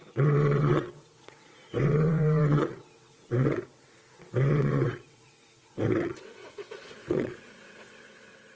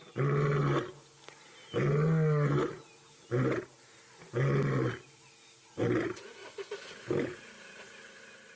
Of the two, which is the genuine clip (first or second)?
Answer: second